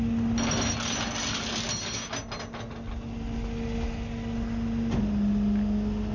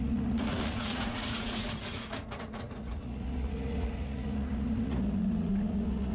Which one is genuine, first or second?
first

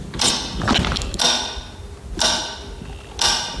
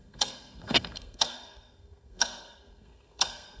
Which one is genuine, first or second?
first